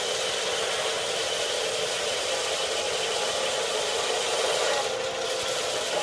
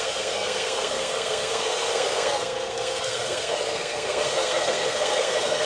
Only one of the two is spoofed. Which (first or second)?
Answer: second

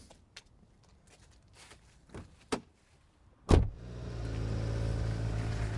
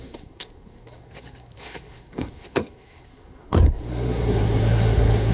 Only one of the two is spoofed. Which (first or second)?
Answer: second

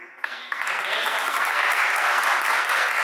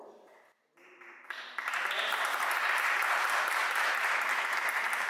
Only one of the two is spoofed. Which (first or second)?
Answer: first